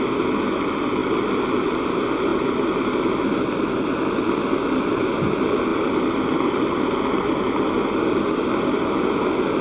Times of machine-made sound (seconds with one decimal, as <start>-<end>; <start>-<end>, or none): 1.0-1.8; 5.7-7.8